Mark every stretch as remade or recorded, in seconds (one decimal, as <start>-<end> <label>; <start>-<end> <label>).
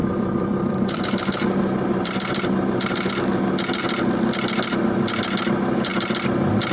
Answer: 0.0-3.1 remade; 3.1-3.8 recorded; 3.8-4.8 remade; 4.8-6.7 recorded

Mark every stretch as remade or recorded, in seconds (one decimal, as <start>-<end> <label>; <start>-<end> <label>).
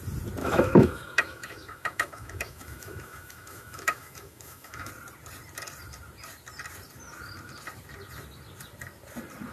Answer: 0.0-0.4 recorded; 0.4-4.9 remade; 4.9-9.5 recorded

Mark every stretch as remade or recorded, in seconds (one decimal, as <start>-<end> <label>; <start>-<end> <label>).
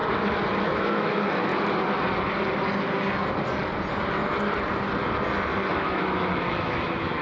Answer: 0.0-0.6 recorded; 0.6-1.5 remade; 1.5-5.7 recorded; 5.7-7.2 remade